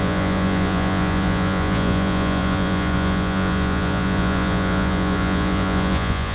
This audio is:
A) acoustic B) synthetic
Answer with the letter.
B